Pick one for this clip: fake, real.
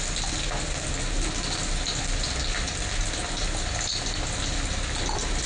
real